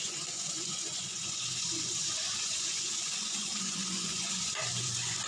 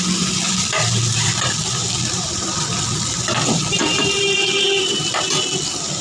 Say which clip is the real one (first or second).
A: second